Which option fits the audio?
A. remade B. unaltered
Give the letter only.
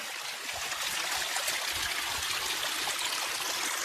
B